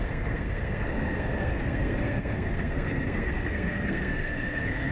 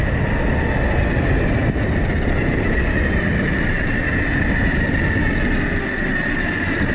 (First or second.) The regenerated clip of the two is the first